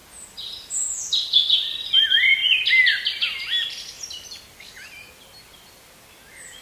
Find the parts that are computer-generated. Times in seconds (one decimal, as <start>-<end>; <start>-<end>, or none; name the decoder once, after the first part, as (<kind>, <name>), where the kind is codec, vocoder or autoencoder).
none